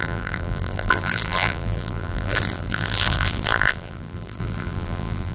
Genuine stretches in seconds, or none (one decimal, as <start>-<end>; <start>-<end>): none